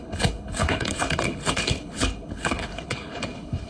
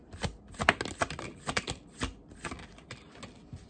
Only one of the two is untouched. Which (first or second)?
second